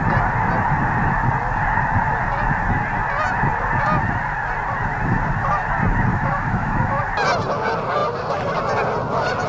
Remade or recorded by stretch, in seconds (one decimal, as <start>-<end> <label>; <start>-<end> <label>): 0.0-6.1 recorded; 6.1-7.0 remade; 7.0-9.5 recorded